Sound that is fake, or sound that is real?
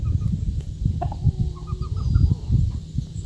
real